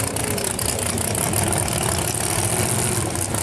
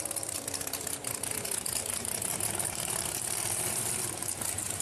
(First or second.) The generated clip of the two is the second